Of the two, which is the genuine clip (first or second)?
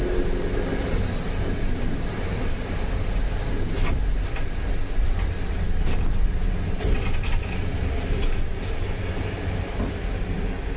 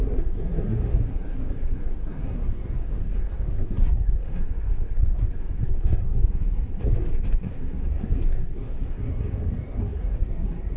first